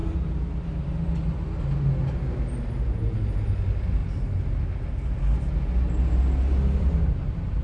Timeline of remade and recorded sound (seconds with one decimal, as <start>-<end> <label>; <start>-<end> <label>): 0.0-7.6 recorded